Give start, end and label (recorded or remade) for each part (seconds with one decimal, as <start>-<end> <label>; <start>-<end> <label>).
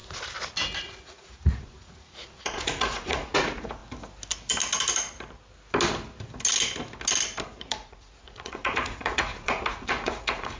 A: 0.0-0.8 recorded; 0.8-3.8 remade; 3.8-7.4 recorded; 7.4-10.6 remade